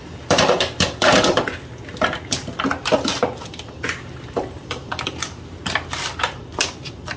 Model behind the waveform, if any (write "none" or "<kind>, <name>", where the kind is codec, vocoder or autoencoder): vocoder, BigVGAN v2